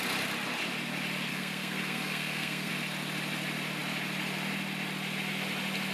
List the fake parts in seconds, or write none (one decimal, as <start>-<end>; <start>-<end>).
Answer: 1.3-2.7